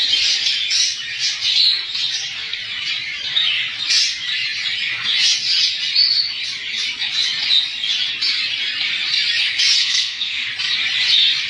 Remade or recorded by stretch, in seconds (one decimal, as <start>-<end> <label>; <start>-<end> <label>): 0.0-9.8 recorded; 9.8-10.5 remade; 10.5-11.5 recorded